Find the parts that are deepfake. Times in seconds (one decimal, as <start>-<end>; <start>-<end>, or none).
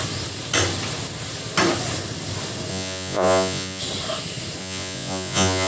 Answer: 2.7-3.8; 4.6-5.7